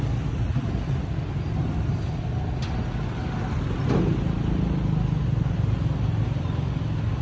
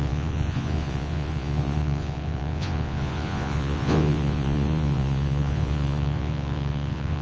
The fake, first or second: second